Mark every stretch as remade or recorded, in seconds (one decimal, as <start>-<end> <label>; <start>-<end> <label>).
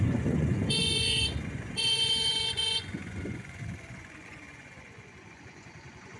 0.0-6.2 remade